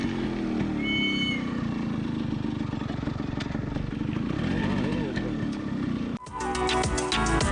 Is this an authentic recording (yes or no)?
yes